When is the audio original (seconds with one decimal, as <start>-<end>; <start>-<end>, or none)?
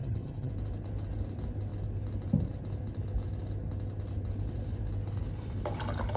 0.5-6.2